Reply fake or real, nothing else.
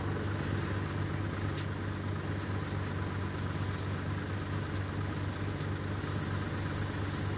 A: real